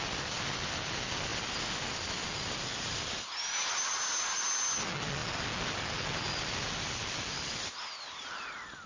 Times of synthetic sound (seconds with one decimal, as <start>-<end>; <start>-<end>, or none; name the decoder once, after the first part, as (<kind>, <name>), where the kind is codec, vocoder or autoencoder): none